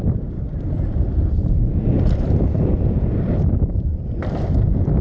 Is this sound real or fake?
fake